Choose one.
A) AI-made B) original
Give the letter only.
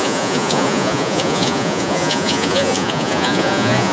A